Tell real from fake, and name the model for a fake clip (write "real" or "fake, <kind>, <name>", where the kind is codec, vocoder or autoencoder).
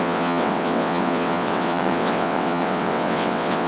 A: fake, vocoder, WaveNeXt